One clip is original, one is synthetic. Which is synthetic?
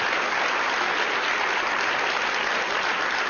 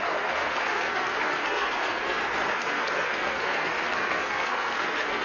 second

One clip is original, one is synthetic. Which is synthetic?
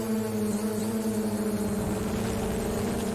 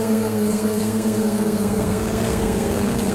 second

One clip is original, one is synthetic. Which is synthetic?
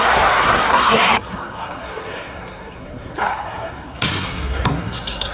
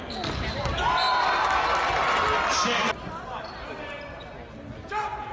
first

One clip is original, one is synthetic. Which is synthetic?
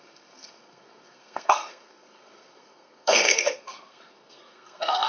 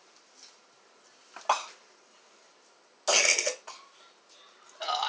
first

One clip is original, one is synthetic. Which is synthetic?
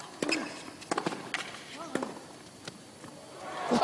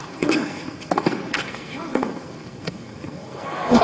second